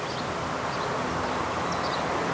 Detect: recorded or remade recorded